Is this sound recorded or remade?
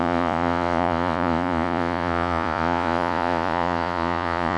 remade